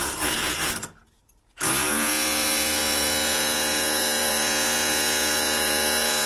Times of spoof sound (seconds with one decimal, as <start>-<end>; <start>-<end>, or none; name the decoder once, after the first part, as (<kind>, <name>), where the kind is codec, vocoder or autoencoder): 0.0-6.3 (vocoder, Vocos)